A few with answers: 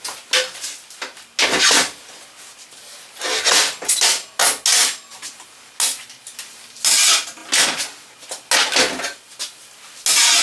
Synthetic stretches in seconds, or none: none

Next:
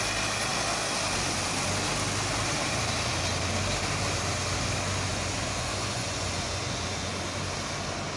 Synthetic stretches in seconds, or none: 5.1-7.2 (vocoder, Vocos)

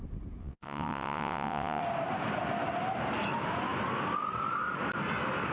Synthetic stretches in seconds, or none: 0.4-1.8 (vocoder, WaveNeXt)

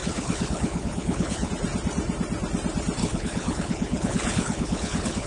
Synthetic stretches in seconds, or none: 0.0-1.5 (codec, HILCodec); 3.0-5.3

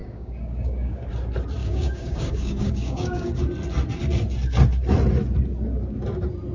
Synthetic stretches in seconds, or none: 0.0-1.1 (codec, DAC); 1.6-3.4

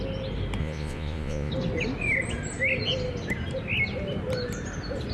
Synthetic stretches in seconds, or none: 0.6-1.5 (vocoder, Vocos)

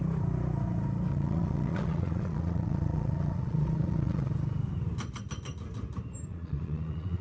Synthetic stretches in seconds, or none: 1.1-4.3 (vocoder, Vocos); 6.3-7.2